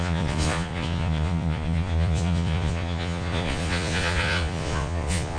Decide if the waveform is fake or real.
fake